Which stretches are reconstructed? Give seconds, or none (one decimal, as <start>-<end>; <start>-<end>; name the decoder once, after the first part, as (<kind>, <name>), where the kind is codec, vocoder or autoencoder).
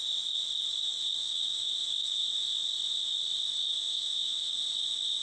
1.2-2.2 (autoencoder, DAC-VAE); 3.7-4.5